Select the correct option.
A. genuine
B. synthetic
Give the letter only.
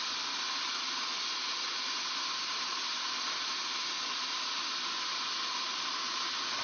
A